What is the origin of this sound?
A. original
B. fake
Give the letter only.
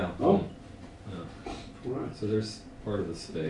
A